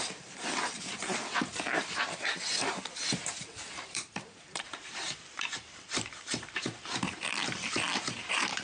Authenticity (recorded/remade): remade